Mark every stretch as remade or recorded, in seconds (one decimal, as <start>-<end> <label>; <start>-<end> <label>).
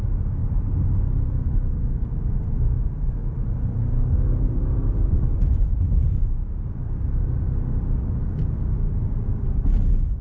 0.0-3.2 recorded; 3.2-6.7 remade; 6.7-10.2 recorded